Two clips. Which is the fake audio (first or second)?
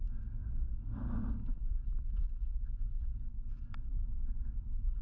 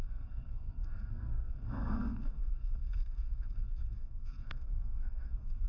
second